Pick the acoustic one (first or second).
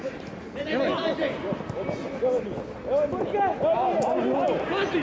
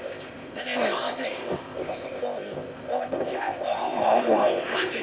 first